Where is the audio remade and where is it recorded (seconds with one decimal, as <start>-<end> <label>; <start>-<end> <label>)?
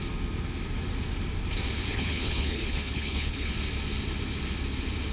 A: 0.0-1.9 recorded; 1.9-3.5 remade; 3.5-5.1 recorded